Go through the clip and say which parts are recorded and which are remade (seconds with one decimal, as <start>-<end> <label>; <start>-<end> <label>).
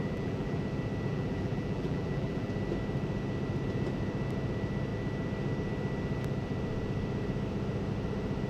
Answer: 0.0-0.6 remade; 0.6-1.1 recorded; 1.1-2.5 remade; 2.5-8.5 recorded